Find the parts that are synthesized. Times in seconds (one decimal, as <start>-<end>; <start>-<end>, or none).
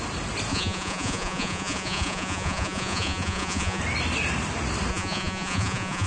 0.5-3.8; 4.9-6.1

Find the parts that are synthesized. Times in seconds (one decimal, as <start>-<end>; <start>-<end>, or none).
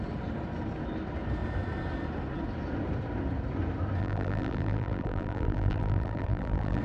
4.0-6.8